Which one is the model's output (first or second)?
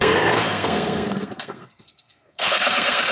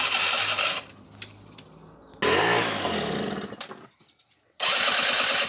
first